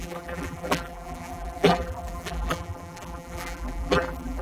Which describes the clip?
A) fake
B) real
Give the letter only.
A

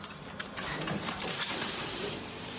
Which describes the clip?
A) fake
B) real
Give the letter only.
A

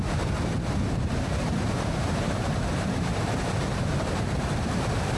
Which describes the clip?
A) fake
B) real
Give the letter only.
A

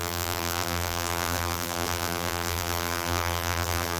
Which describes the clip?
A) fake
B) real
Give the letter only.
A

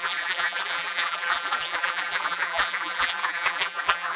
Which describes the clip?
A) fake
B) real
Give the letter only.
A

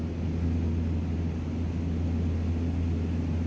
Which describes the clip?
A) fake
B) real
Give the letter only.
B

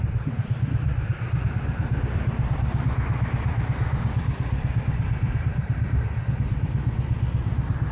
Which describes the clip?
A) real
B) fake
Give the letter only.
B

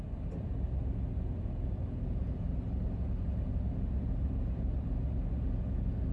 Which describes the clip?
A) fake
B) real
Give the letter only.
B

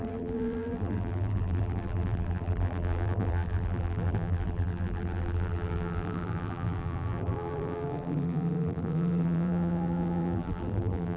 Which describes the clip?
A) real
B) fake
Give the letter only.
B